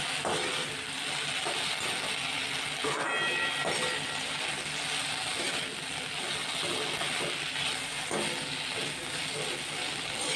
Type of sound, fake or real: real